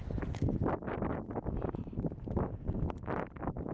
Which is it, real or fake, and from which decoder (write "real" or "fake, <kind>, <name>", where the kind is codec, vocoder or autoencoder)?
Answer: real